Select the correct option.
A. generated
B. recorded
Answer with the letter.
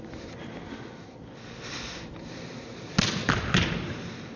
B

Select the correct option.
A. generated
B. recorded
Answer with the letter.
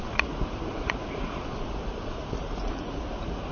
A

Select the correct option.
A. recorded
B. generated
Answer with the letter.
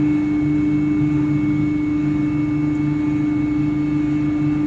A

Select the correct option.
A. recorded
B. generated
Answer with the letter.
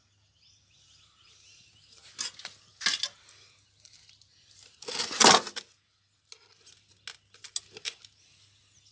A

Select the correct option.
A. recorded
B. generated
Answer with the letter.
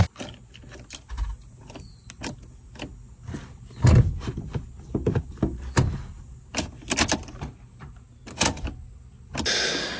A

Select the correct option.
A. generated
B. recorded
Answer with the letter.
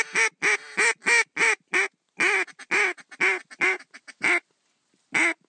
B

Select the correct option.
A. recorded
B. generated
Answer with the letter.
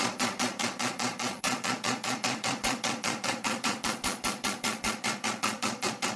B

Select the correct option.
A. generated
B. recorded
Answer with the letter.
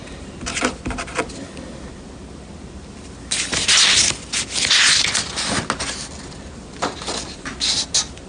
B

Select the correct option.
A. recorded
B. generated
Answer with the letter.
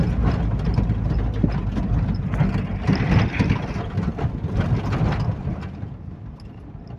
A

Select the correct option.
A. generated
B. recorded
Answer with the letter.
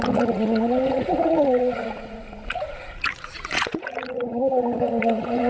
A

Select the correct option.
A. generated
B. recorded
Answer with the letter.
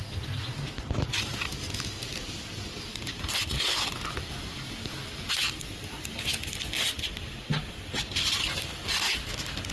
B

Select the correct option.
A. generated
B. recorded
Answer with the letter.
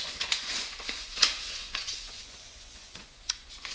A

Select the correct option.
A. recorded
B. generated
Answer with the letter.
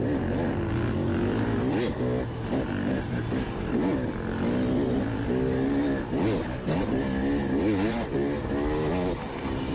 A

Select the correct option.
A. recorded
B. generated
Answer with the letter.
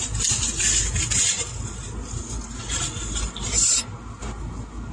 A